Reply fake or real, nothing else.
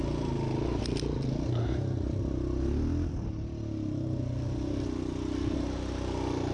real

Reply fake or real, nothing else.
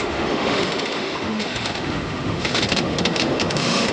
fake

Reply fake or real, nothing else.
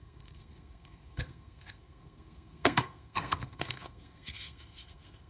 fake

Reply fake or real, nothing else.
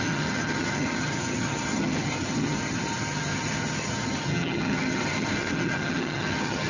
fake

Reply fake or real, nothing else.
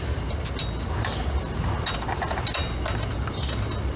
real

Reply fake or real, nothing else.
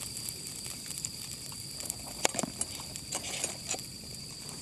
real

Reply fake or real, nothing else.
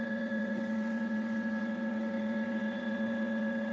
fake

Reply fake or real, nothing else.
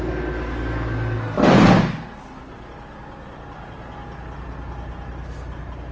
real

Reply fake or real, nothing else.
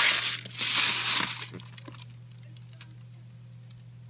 real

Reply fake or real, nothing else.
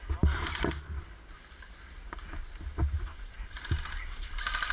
real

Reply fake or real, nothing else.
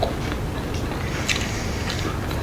real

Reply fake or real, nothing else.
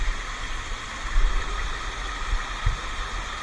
real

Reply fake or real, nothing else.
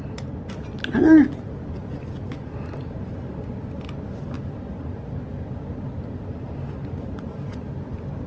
real